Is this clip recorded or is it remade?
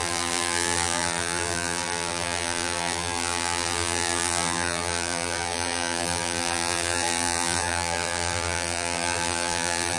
remade